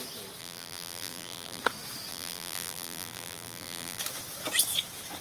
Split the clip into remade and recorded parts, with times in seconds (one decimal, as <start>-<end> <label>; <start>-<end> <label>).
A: 0.0-0.4 recorded; 0.4-1.6 remade; 1.6-2.1 recorded; 2.1-4.0 remade; 4.0-5.2 recorded